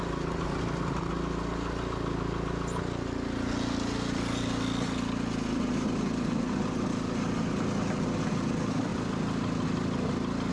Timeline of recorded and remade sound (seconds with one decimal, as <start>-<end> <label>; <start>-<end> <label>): 0.0-10.5 recorded